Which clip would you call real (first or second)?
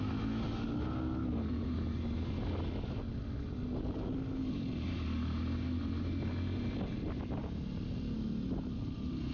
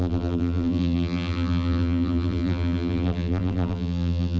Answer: first